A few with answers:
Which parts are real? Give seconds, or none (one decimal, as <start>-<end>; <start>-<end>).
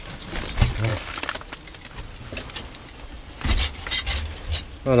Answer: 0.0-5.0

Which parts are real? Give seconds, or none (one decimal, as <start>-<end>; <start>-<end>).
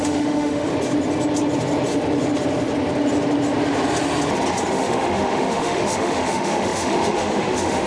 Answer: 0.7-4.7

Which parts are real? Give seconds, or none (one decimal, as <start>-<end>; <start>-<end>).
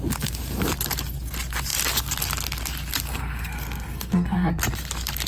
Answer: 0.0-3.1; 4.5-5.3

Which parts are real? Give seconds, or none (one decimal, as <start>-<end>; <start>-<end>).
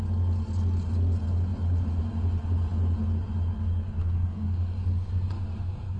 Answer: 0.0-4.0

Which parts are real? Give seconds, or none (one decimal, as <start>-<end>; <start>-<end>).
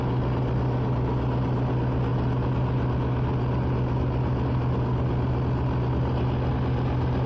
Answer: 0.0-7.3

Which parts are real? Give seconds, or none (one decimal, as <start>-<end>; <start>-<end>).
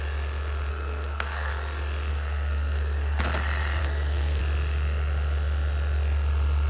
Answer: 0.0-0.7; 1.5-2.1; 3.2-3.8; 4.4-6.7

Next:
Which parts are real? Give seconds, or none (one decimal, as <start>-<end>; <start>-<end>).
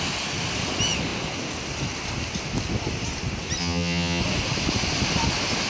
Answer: 0.0-3.6; 4.2-5.7